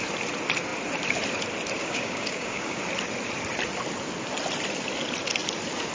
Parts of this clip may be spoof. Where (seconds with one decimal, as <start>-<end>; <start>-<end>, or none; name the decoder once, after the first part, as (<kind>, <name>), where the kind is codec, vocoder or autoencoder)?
1.8-2.8 (codec, DAC)